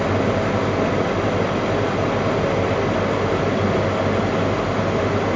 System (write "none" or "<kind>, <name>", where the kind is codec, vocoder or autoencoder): none